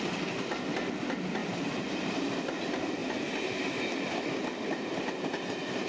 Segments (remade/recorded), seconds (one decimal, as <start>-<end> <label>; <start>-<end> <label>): 0.0-1.4 recorded; 1.4-2.3 remade; 2.3-5.9 recorded